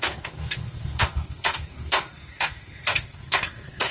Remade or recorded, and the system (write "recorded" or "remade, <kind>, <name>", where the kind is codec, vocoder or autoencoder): remade, codec, SNAC